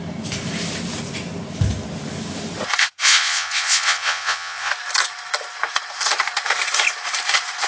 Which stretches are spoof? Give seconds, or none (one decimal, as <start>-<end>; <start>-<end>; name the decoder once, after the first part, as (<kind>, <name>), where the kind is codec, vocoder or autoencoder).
2.8-4.7 (vocoder, Vocos)